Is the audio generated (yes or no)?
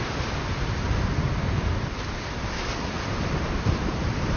no